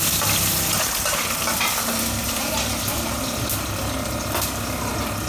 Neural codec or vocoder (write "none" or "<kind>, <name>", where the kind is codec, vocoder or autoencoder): none